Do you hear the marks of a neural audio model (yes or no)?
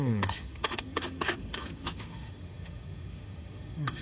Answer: yes